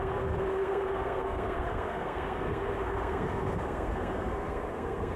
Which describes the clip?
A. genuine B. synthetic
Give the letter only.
B